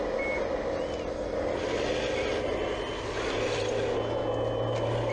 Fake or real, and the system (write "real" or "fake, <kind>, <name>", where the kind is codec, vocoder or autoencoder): real